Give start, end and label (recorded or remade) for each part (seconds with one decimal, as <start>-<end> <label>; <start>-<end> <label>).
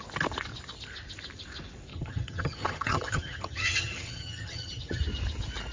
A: 0.0-1.9 recorded; 1.9-5.0 remade; 5.0-5.7 recorded